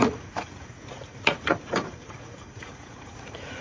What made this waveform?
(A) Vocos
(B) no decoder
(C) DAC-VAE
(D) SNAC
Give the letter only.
A